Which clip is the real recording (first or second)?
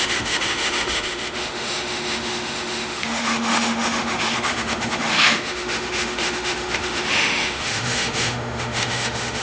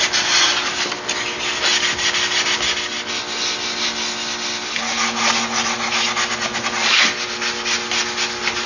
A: second